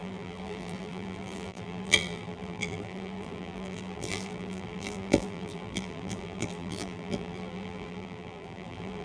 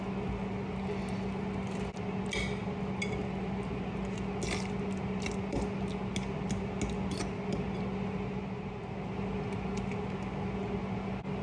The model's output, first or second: first